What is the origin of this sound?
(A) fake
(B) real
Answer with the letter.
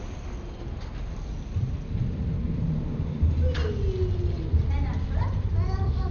B